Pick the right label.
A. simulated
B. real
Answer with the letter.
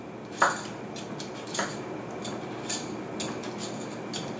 B